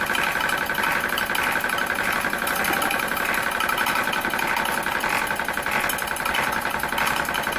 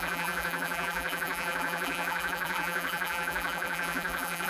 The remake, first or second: second